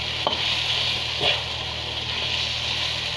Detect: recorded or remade recorded